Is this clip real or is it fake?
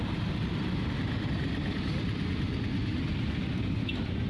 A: real